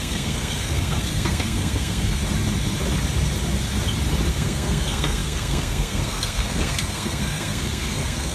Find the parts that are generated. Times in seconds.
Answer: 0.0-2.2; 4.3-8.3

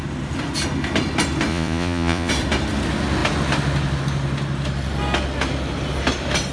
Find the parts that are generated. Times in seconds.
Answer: 1.5-2.3